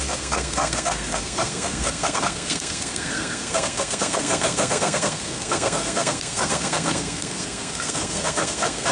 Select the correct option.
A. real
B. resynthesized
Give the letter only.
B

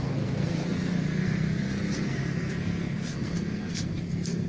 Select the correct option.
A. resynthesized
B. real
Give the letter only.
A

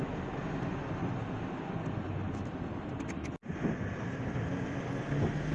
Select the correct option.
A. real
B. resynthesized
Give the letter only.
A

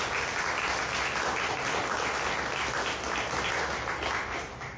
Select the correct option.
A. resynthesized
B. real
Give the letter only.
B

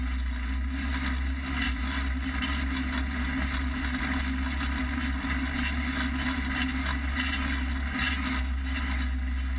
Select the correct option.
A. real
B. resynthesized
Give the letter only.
A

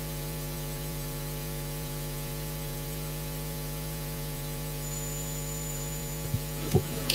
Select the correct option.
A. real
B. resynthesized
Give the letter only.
B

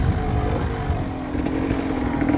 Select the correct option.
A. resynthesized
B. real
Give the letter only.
B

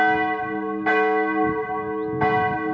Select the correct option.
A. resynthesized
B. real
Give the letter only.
B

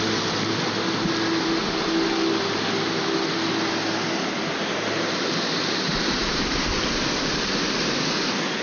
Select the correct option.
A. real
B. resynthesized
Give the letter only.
A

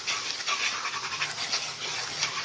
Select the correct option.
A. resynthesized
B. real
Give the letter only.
B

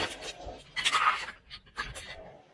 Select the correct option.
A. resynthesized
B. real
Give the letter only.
B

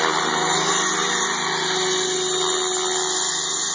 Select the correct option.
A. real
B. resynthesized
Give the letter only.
A